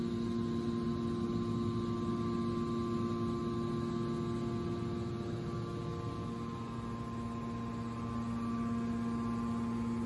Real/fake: real